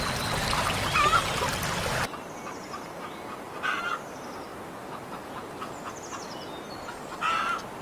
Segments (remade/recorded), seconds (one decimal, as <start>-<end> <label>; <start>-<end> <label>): 0.0-7.8 recorded